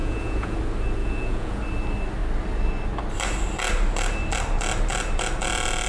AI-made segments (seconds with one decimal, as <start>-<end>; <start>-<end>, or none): 0.0-0.6; 1.0-1.6